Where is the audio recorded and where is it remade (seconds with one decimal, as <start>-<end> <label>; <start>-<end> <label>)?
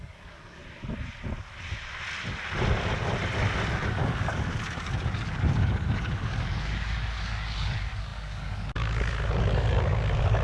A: 0.0-0.6 remade; 0.6-3.7 recorded; 3.7-10.4 remade